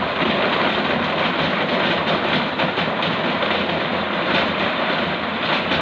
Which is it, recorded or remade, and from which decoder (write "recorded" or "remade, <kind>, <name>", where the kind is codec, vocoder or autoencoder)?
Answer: recorded